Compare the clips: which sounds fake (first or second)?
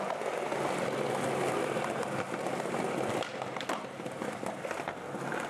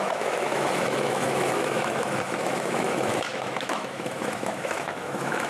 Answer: second